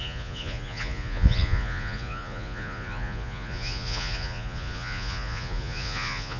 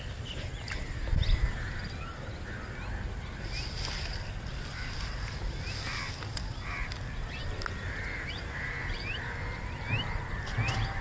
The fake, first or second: first